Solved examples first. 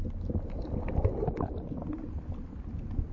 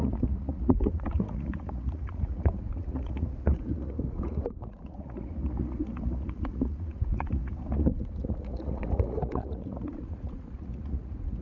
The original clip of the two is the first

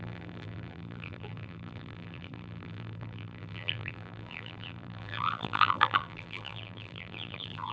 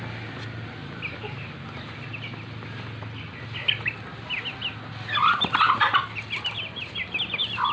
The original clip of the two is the second